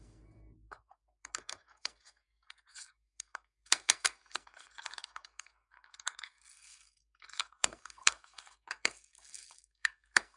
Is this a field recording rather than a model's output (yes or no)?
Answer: no